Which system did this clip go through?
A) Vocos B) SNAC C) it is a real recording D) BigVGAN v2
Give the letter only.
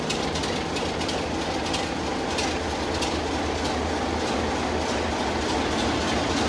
C